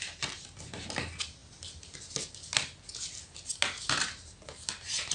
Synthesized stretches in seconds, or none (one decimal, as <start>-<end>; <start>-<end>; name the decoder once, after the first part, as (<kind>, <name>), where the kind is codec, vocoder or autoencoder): none